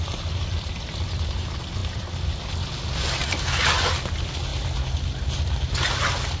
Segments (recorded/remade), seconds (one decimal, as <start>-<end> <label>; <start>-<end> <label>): 0.0-6.4 recorded